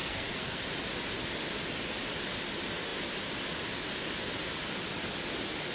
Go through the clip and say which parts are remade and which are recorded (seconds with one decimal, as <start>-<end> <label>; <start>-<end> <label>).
0.0-0.6 remade; 0.6-5.7 recorded